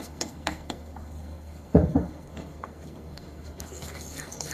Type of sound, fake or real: fake